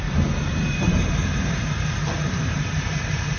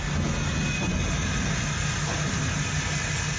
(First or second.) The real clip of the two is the second